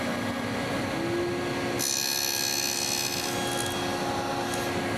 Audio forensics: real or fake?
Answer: real